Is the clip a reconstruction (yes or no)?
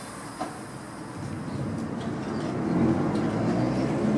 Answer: no